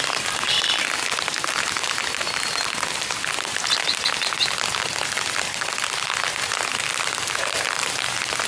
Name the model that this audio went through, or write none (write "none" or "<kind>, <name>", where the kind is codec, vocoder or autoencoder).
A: none